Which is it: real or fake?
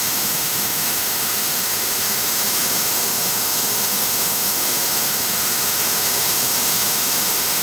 fake